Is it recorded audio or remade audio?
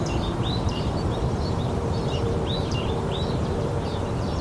remade